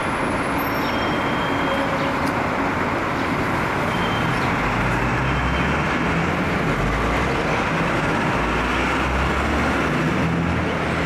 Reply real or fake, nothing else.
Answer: real